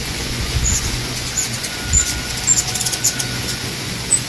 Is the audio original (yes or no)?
no